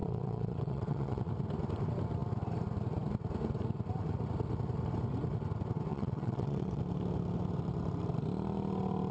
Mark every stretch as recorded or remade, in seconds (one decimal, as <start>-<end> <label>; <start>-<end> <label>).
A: 0.0-1.3 remade; 1.3-5.9 recorded; 5.9-6.8 remade; 6.8-9.1 recorded